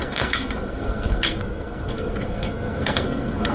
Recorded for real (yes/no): no